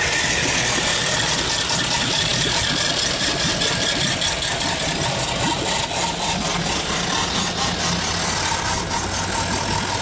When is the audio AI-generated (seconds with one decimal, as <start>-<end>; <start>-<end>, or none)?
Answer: none